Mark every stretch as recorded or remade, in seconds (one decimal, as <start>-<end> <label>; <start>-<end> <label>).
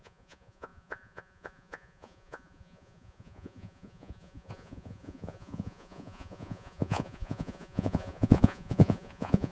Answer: 0.0-9.5 remade